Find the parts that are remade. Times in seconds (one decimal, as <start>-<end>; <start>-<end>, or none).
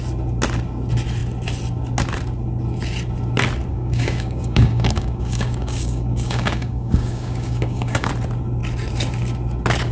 3.7-8.1